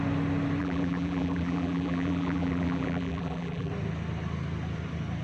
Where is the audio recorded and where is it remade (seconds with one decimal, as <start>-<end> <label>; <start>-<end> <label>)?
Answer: 0.0-0.6 recorded; 0.6-3.7 remade; 3.7-5.2 recorded